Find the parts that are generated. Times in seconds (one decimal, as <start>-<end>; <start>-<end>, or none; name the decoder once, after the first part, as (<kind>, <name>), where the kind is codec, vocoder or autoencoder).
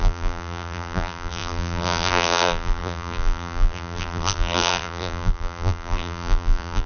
0.0-6.9 (vocoder, BigVGAN v2)